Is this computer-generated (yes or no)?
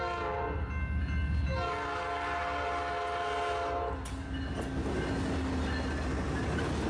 no